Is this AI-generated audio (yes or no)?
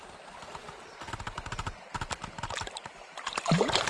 no